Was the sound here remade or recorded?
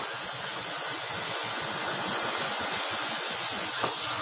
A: remade